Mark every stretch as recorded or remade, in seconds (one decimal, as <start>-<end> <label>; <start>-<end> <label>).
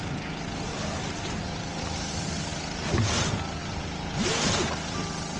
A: 0.0-0.7 recorded; 0.7-2.1 remade; 2.1-3.6 recorded; 3.6-4.3 remade; 4.3-5.4 recorded